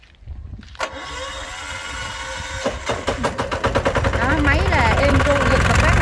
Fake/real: real